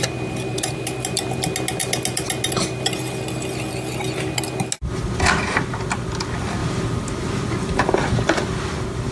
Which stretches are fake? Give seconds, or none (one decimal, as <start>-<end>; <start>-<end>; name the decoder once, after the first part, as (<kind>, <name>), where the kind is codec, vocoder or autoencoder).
0.5-1.2 (vocoder, BigVGAN v2)